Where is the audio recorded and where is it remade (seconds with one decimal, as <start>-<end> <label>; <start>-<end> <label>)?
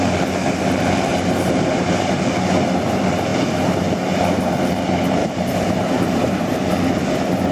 0.0-1.1 recorded; 1.1-2.1 remade; 2.1-5.2 recorded; 5.2-6.7 remade; 6.7-7.5 recorded